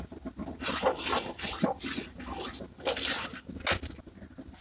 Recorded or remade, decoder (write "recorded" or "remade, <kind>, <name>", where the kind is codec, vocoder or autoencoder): recorded